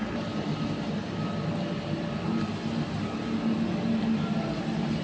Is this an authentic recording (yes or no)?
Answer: yes